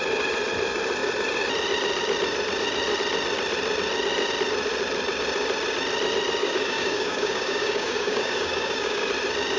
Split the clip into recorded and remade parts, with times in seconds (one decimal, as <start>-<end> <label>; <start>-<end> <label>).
0.0-6.4 recorded; 6.4-9.1 remade; 9.1-9.6 recorded